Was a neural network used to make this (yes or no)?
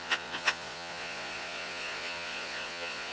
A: yes